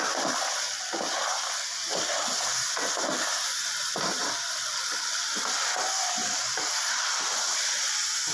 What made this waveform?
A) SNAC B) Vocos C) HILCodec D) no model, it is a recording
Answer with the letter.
D